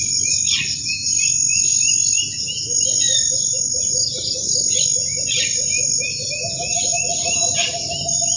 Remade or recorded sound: recorded